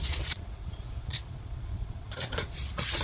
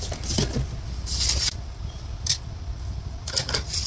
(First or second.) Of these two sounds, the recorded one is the second